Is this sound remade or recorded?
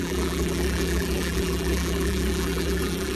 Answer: remade